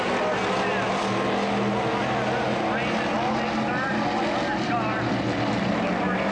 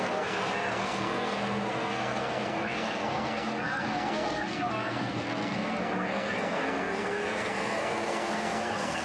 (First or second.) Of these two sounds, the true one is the first